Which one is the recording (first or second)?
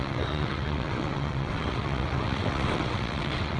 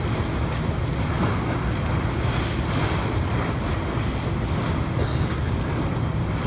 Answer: second